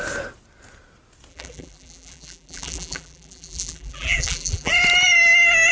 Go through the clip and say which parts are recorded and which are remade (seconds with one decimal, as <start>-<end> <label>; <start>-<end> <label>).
0.0-1.3 recorded; 1.3-4.7 remade; 4.7-5.7 recorded